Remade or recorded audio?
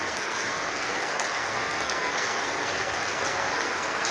remade